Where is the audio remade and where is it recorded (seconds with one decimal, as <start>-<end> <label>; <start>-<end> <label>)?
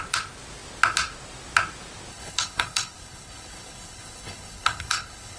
0.0-2.1 recorded; 2.1-5.4 remade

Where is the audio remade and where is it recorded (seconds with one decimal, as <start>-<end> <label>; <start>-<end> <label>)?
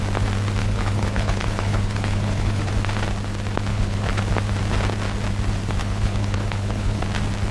0.0-0.6 recorded; 0.6-2.7 remade; 2.7-3.7 recorded; 3.7-4.2 remade; 4.2-5.8 recorded; 5.8-7.0 remade; 7.0-7.5 recorded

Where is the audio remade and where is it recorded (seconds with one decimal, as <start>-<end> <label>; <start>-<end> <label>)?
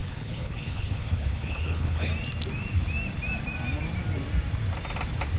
0.0-2.1 remade; 2.1-5.4 recorded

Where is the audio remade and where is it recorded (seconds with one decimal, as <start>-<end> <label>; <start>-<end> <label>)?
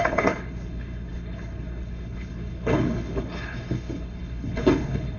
0.0-5.2 remade